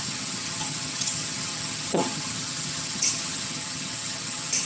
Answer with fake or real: fake